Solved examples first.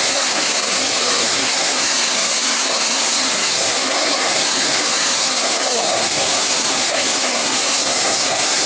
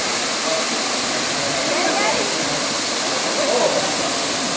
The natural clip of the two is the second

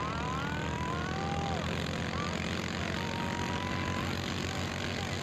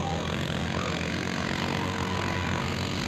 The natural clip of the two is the first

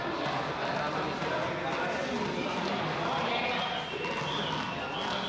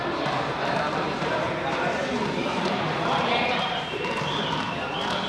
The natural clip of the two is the first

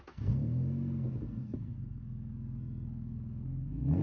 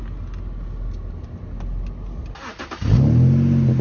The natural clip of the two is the second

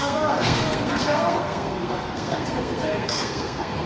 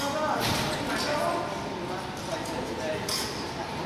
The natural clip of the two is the second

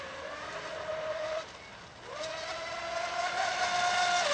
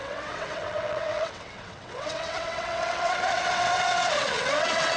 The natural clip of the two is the first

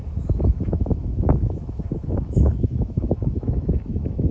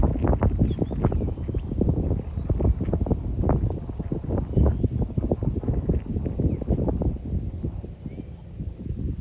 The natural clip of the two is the second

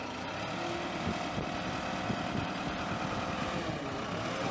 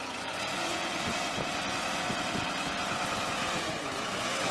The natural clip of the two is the first